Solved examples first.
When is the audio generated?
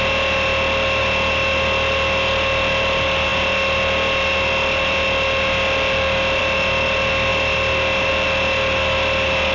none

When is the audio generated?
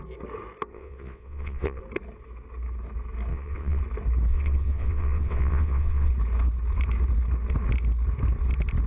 0.7-1.8; 3.3-3.8; 4.3-6.1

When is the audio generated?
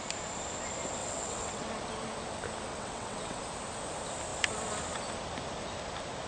1.0-1.7; 2.7-3.4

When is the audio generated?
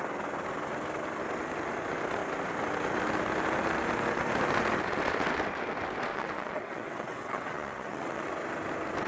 6.1-8.3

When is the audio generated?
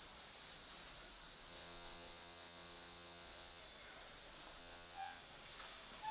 1.5-3.6; 4.6-5.2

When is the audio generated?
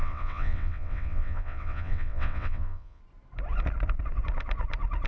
0.0-3.0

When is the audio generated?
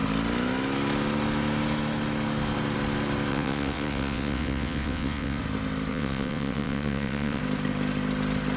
3.3-5.4; 5.9-7.4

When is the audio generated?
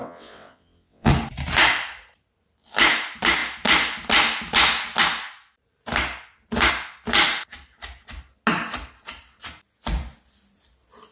0.0-1.1